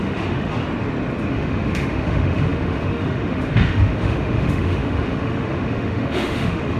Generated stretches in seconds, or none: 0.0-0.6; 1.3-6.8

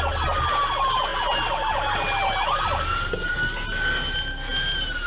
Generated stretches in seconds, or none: none

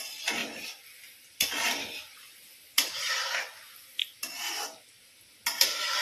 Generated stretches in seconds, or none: none

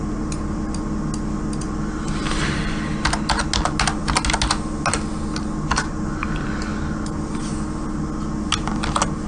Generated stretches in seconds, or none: none